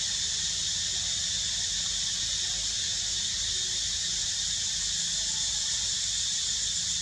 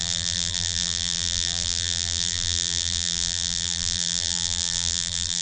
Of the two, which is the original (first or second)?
first